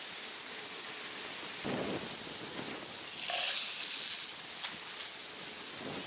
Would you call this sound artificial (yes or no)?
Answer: no